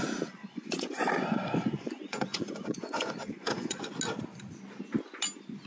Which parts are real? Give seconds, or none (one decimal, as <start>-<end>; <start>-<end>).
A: 0.0-0.4; 3.8-5.7